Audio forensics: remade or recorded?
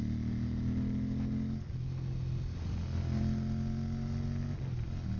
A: recorded